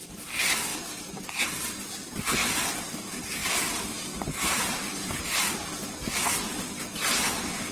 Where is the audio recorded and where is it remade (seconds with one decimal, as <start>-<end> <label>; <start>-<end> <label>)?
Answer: 0.0-3.4 recorded; 3.4-5.5 remade; 5.5-7.7 recorded